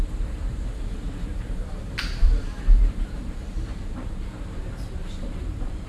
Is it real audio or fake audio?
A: fake